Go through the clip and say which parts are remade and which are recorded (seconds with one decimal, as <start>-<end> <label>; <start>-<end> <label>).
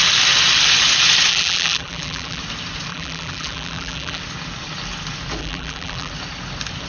0.0-1.3 recorded; 1.3-2.4 remade; 2.4-2.9 recorded; 2.9-4.2 remade; 4.2-5.4 recorded; 5.4-6.1 remade; 6.1-6.9 recorded